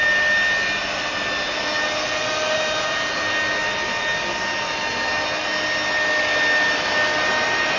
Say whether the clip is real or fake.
real